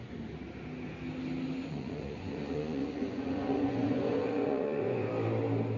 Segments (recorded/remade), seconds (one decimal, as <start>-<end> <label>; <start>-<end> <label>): 0.0-1.6 recorded; 1.6-5.1 remade; 5.1-5.8 recorded